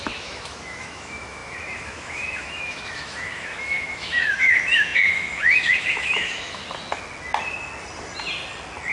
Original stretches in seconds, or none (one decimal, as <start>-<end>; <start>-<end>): 6.6-8.9